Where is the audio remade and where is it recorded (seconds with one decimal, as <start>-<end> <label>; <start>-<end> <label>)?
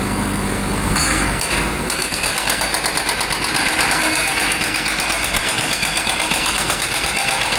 0.0-2.7 remade; 2.7-3.9 recorded; 3.9-7.6 remade